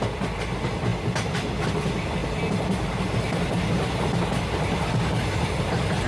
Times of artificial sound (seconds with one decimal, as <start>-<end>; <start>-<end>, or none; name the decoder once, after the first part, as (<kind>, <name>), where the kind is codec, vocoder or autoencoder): none